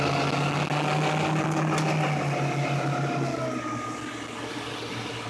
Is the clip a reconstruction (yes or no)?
no